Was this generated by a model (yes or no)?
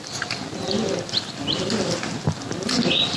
no